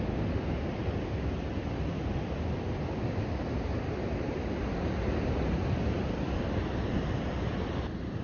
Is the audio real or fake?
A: real